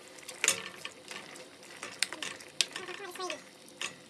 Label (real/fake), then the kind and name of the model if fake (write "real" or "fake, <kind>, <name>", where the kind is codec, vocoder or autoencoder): real